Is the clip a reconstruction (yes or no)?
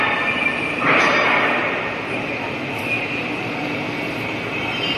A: no